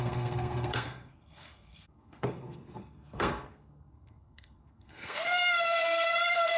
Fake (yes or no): yes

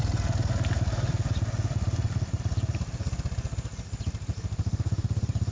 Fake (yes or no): no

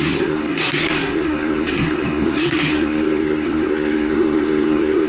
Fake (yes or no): yes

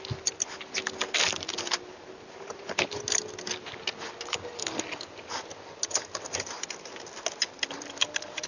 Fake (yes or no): no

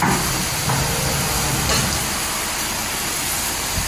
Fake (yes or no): no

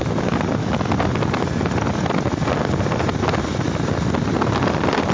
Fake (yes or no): no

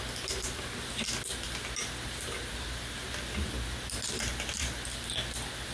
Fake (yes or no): no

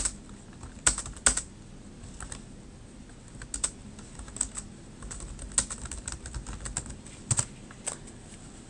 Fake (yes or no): no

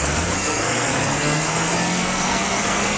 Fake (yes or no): yes